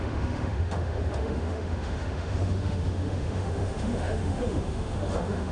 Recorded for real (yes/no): no